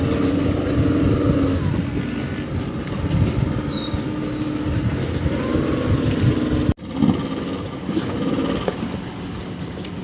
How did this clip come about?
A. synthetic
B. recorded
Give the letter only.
B